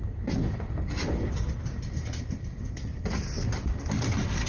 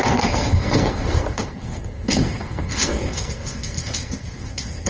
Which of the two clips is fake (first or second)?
second